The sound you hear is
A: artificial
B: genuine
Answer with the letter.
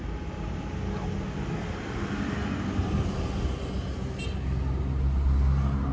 B